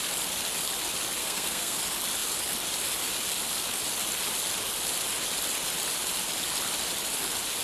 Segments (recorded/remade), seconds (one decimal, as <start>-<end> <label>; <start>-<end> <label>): 0.0-1.2 recorded; 1.2-1.8 remade; 1.8-7.6 recorded